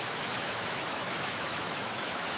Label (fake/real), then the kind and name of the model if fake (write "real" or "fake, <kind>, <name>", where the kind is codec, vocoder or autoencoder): fake, autoencoder, DAC-VAE